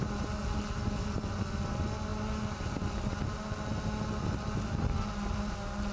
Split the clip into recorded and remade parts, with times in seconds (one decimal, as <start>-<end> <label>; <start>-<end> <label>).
0.0-5.9 recorded